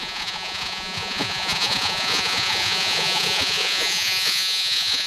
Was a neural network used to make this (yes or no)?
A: yes